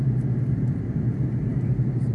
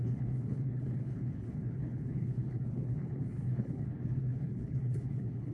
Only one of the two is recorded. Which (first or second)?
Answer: first